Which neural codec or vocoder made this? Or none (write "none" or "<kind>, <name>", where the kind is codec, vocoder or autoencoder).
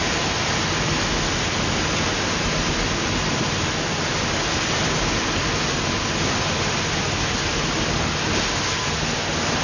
none